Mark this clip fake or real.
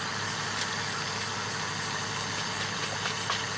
real